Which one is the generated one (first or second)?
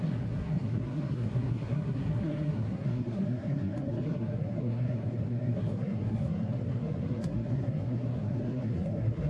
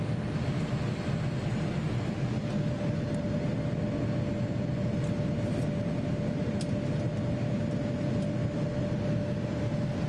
first